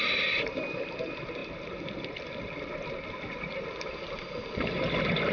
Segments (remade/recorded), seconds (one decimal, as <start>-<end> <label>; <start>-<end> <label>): 0.0-5.3 recorded